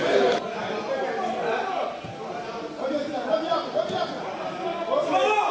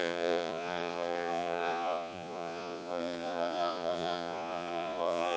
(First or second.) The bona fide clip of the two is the first